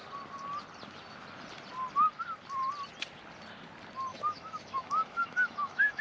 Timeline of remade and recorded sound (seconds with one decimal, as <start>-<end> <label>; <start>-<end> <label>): 0.0-4.1 recorded; 4.1-6.0 remade